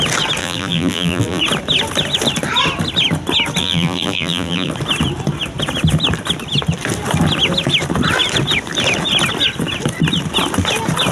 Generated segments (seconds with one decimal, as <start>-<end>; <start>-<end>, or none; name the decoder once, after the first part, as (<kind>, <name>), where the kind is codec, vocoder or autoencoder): 0.4-1.4 (vocoder, BigVGAN v2); 3.6-4.7